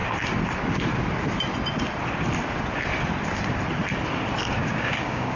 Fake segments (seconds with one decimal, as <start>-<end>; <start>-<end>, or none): 4.6-5.4